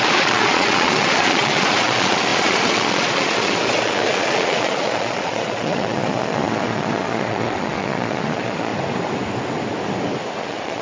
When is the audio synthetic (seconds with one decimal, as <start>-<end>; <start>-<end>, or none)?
0.0-8.7; 10.4-10.8